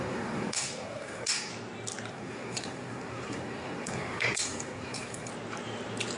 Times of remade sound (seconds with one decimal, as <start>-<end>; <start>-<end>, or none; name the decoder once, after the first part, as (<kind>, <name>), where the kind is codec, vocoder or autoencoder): 0.0-1.5 (codec, SNAC); 2.1-5.3